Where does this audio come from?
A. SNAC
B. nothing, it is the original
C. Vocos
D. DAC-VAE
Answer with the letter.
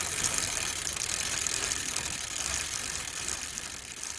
B